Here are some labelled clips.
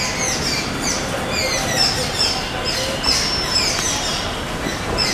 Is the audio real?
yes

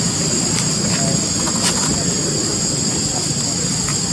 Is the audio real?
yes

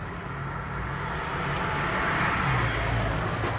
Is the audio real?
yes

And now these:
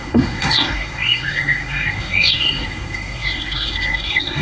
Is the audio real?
no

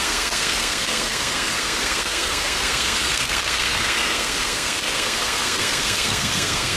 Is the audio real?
no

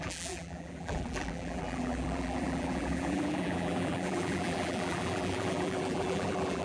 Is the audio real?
no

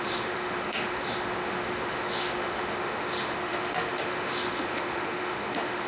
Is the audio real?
no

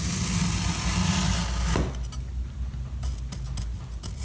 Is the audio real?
yes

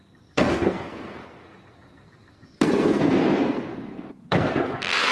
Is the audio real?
no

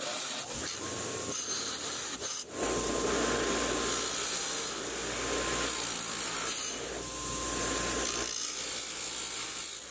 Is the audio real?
yes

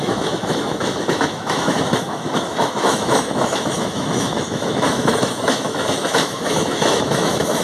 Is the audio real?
no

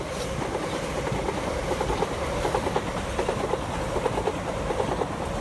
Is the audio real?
yes